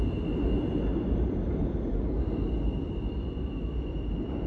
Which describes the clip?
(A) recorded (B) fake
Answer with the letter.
A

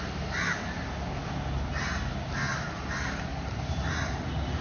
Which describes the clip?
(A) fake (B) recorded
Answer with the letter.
B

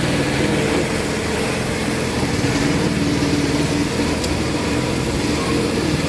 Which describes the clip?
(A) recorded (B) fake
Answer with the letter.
B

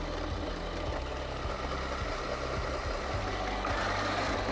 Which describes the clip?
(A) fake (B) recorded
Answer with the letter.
B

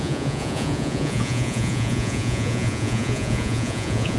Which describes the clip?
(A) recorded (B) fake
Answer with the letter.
B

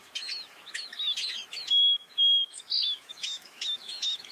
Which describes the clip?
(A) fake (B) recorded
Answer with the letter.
A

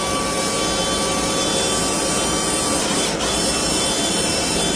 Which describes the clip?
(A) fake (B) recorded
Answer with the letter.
B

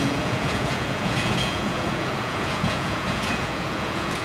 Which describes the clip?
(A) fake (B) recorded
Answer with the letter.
A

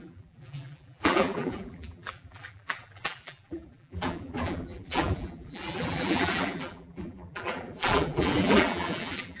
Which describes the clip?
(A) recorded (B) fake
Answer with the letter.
B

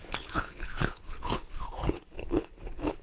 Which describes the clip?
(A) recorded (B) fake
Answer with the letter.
B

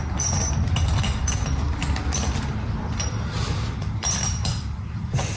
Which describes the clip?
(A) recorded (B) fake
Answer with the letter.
B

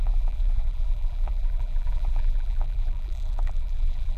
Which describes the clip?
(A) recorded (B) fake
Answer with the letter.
B